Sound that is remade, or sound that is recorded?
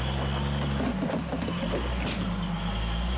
recorded